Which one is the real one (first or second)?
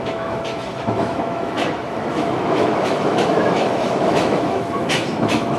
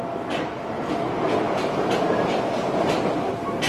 second